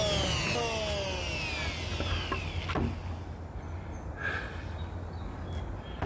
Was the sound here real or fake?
real